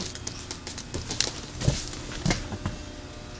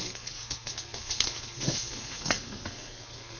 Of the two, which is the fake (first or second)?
second